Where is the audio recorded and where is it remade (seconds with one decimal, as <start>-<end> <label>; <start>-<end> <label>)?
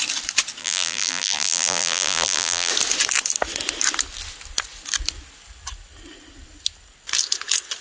0.0-0.6 recorded; 0.6-2.7 remade; 2.7-7.8 recorded